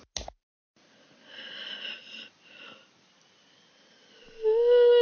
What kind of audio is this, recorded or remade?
recorded